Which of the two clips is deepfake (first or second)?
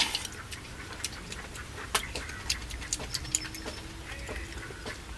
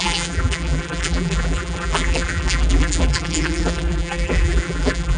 second